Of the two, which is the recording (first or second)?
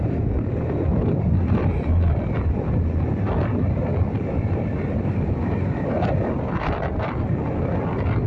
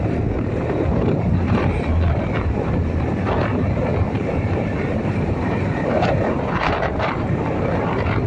first